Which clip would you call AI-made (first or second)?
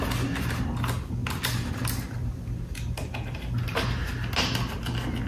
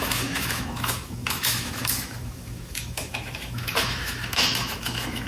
second